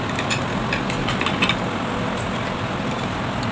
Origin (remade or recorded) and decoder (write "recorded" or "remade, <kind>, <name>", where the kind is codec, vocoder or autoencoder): recorded